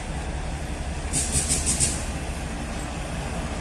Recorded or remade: recorded